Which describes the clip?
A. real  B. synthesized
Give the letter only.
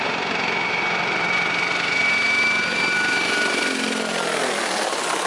A